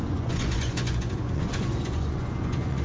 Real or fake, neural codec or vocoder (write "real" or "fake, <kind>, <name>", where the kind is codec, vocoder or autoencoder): fake, vocoder, Vocos